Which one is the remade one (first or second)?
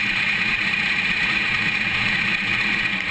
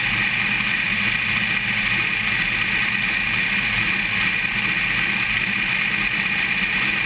first